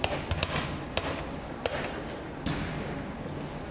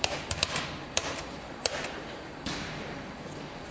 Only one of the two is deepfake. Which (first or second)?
second